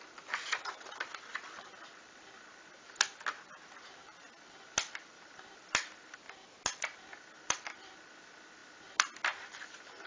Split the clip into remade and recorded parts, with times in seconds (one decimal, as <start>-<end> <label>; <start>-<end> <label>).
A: 0.0-10.1 recorded